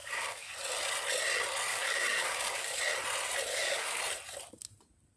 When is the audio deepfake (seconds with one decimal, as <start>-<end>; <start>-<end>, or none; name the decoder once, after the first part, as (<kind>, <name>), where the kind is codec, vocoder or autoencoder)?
0.0-0.5 (codec, DAC); 1.7-2.8; 3.5-4.0